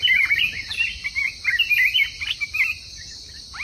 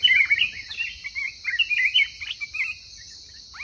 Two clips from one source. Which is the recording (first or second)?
second